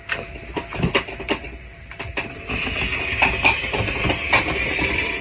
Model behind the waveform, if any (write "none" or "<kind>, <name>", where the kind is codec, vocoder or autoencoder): none